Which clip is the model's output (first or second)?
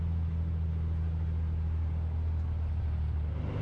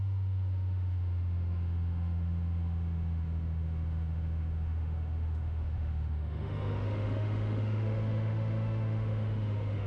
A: second